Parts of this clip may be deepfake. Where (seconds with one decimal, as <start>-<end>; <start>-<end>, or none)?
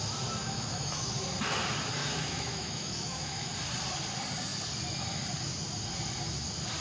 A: 0.4-1.1; 2.0-3.5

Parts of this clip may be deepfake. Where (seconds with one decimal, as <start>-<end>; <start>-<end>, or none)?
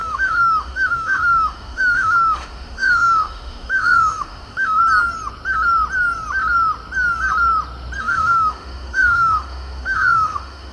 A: 0.0-4.8; 8.0-10.7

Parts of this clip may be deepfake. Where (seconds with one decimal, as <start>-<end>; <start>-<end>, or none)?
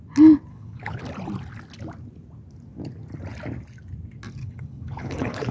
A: 0.5-1.0; 4.4-5.5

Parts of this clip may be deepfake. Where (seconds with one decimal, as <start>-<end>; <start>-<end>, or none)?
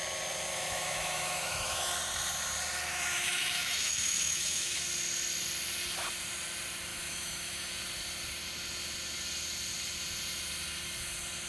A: 0.5-1.9; 2.9-4.8; 6.9-7.7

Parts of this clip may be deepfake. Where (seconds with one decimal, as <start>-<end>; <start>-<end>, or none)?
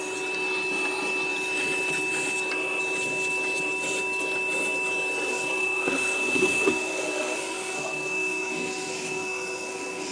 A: 5.3-10.1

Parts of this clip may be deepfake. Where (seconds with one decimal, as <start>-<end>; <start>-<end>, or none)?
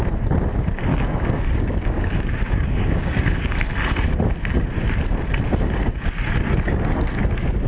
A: 0.9-3.6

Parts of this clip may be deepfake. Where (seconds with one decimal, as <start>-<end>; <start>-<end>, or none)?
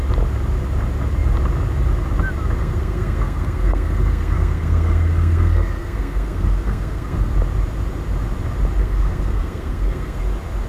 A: 2.6-7.3; 8.8-10.2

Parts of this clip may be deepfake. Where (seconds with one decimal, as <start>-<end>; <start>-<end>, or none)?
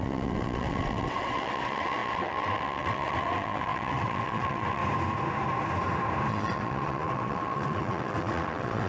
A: 0.0-4.8; 6.3-8.9